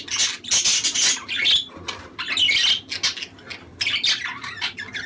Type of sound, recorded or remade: recorded